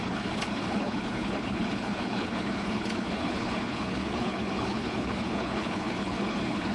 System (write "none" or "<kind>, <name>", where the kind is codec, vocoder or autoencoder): codec, HILCodec